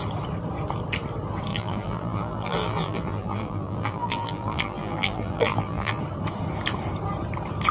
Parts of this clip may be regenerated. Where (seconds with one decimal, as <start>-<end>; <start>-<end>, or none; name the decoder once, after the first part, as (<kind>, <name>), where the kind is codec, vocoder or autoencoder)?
1.5-6.0 (vocoder, BigVGAN v2)